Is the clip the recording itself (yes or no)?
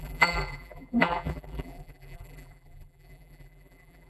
no